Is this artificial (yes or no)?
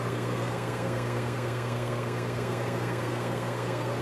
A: yes